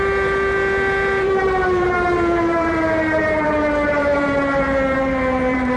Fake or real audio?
fake